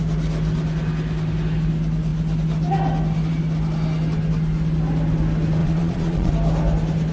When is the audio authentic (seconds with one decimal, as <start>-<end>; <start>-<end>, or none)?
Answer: 0.0-5.6; 6.3-7.1